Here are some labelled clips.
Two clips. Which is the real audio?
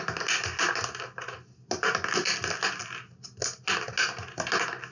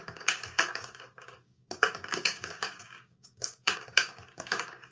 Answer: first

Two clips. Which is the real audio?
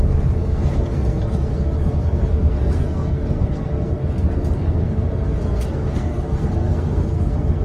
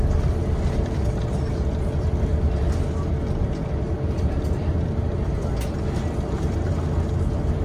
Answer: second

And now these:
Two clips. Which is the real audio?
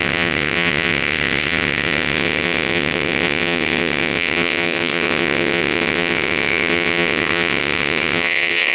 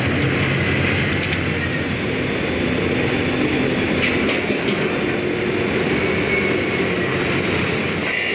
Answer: second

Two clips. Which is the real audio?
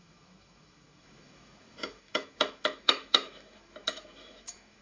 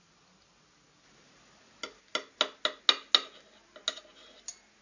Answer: second